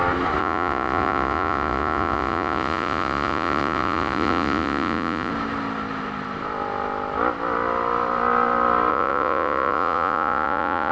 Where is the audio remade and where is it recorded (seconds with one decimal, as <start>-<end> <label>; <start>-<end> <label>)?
0.0-0.4 recorded; 0.4-5.3 remade; 5.3-8.9 recorded; 8.9-10.9 remade